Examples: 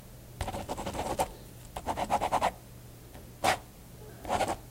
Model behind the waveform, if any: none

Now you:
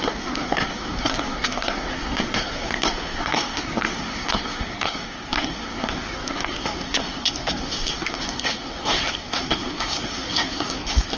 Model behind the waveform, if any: codec, SNAC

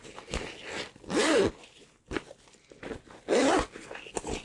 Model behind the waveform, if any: none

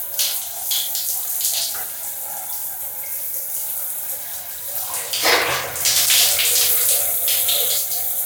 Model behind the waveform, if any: none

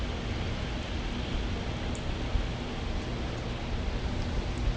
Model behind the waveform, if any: none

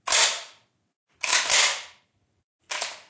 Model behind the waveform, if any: none